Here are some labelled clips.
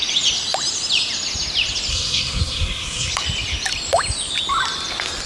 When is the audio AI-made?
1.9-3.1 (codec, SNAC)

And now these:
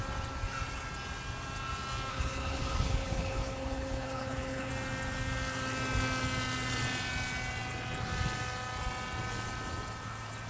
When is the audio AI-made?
2.1-4.7 (codec, HILCodec)

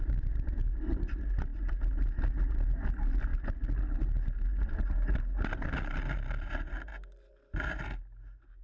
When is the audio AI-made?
none